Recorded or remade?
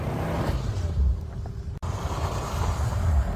recorded